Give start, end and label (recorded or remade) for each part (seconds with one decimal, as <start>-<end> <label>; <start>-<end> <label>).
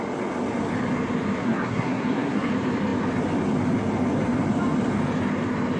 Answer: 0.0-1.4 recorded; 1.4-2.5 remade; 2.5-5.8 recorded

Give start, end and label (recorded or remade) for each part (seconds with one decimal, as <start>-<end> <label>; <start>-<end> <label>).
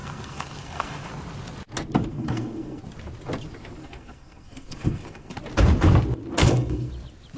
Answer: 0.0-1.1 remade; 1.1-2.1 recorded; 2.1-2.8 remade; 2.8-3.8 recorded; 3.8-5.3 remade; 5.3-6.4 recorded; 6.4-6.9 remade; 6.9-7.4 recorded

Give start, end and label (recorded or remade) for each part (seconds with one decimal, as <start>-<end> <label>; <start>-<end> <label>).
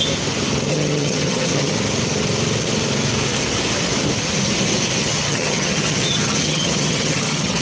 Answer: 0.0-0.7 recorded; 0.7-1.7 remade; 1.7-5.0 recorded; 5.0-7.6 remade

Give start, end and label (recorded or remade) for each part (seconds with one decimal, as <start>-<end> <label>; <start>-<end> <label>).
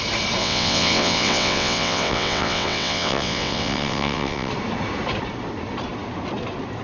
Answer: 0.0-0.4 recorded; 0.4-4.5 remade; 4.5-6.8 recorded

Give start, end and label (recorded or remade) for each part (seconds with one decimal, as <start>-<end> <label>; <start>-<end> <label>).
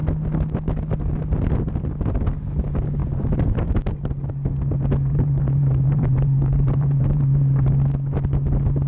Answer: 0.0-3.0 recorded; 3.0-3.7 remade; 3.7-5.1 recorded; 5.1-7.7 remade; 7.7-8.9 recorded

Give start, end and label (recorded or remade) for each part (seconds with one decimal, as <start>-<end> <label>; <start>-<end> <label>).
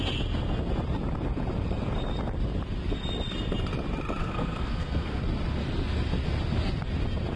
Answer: 0.0-4.2 recorded; 4.2-5.2 remade; 5.2-7.4 recorded